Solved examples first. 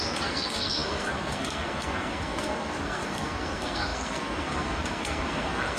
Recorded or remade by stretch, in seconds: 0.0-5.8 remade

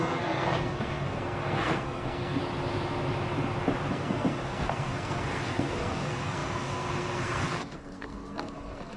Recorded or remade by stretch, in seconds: 0.0-2.4 remade; 2.4-3.9 recorded; 3.9-9.0 remade